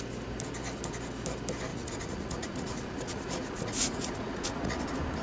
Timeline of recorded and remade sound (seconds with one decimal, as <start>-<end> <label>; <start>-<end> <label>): 0.0-1.7 recorded; 1.7-4.8 remade; 4.8-5.2 recorded